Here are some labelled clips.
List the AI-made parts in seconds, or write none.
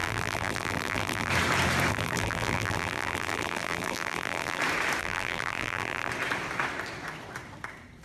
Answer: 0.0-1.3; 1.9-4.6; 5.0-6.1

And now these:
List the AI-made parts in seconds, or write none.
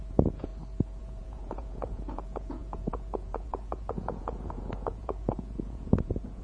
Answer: 0.0-0.5; 1.0-6.4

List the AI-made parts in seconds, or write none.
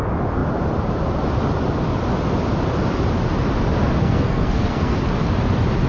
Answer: 4.0-5.0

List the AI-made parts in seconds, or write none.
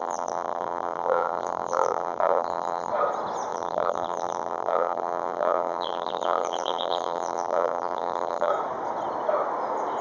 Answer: 0.0-2.9; 3.5-8.5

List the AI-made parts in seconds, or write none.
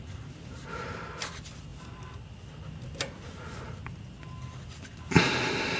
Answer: none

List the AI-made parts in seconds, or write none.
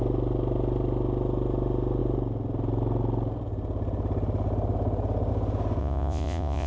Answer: 5.8-6.7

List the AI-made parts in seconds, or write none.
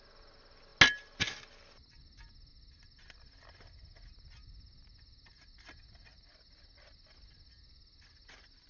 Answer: none